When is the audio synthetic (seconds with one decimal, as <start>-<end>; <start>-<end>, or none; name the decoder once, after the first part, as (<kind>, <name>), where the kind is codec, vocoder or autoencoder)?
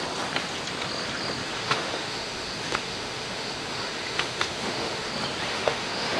1.4-5.1 (autoencoder, DAC-VAE); 5.5-6.2